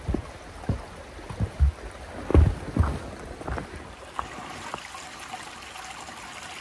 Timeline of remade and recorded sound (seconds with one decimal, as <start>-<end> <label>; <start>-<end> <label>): 0.0-6.6 recorded